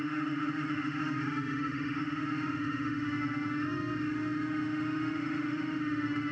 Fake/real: fake